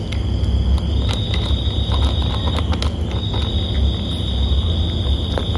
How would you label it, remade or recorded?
recorded